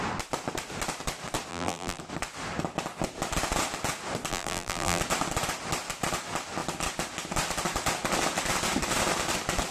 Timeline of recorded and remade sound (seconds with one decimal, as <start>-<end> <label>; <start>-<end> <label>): 0.0-1.5 recorded; 1.5-2.0 remade; 2.0-4.3 recorded; 4.3-5.0 remade; 5.0-9.7 recorded